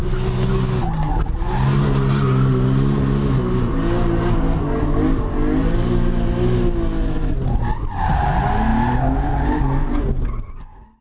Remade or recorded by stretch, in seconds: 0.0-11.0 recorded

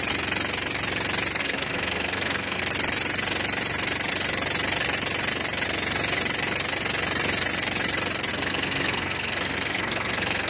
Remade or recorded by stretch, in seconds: 0.0-1.4 recorded; 1.4-2.6 remade; 2.6-8.3 recorded; 8.3-10.5 remade

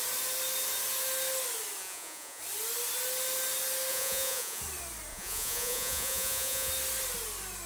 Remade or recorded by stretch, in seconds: 0.0-1.8 recorded; 1.8-2.4 remade; 2.4-3.9 recorded; 3.9-4.6 remade; 4.6-5.1 recorded; 5.1-6.7 remade; 6.7-7.7 recorded

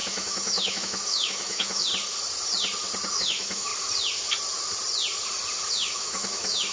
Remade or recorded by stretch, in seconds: 0.0-1.9 remade; 1.9-3.1 recorded; 3.1-3.7 remade; 3.7-5.7 recorded; 5.7-6.7 remade

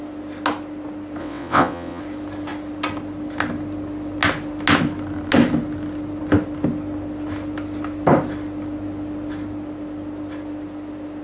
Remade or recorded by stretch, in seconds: 0.0-1.2 recorded; 1.2-2.0 remade; 2.0-11.2 recorded